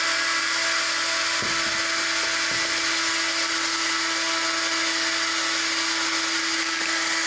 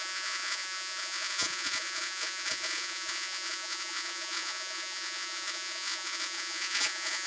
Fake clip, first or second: second